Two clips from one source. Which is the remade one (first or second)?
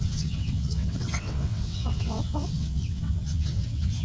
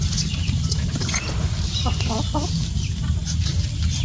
first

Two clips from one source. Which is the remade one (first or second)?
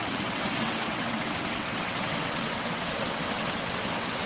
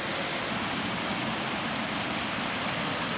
first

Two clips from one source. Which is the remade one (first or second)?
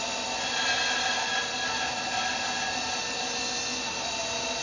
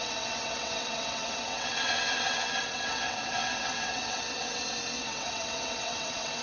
second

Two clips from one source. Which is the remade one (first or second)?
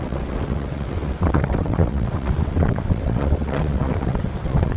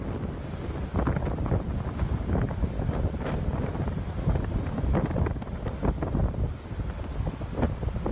first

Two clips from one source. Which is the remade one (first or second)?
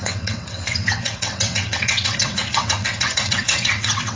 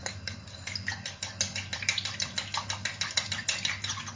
first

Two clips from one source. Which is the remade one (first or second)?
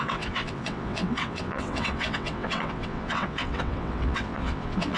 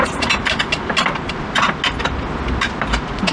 first